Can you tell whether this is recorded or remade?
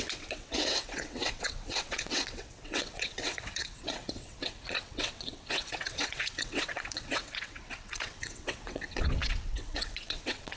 remade